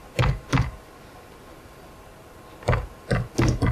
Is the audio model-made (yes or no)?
no